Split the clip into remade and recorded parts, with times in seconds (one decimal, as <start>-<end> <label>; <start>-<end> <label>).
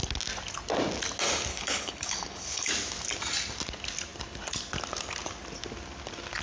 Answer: 0.0-1.5 recorded; 1.5-2.7 remade; 2.7-6.4 recorded